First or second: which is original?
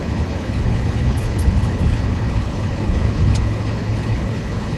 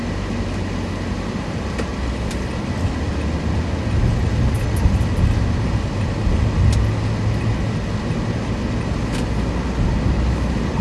second